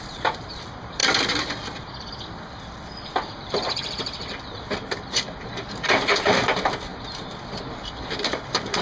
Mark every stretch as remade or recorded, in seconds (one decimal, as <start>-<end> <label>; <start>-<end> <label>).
0.0-1.0 remade; 1.0-3.3 recorded; 3.3-6.9 remade; 6.9-7.6 recorded; 7.6-8.8 remade